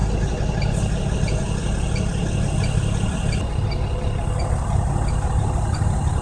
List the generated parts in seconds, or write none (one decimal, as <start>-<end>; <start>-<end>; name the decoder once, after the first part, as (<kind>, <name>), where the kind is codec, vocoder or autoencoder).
none